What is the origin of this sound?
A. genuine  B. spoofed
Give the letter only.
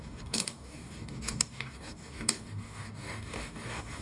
B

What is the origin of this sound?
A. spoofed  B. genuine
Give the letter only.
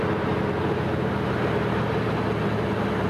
B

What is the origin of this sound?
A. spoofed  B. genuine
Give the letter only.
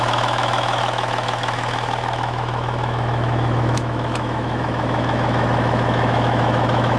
A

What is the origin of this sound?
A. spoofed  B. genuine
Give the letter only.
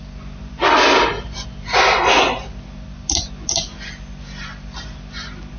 B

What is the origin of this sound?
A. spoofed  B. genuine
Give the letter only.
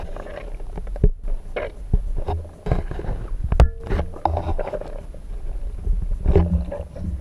B